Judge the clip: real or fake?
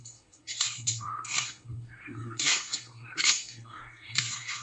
fake